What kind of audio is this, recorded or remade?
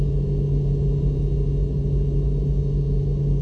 recorded